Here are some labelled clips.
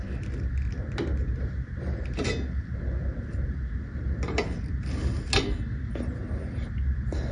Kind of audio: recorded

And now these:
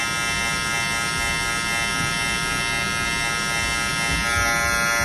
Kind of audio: recorded